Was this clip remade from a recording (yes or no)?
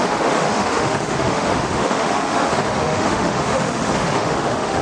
yes